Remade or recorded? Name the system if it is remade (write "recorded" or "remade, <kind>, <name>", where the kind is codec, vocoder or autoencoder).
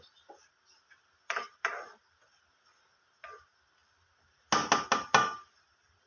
recorded